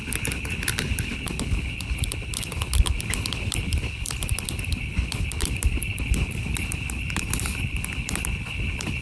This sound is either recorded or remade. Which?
remade